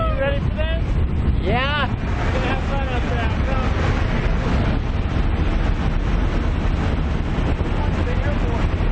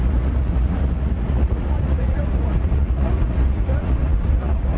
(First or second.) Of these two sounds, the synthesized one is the second